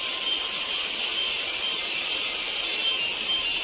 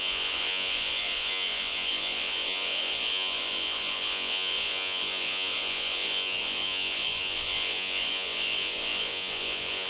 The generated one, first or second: second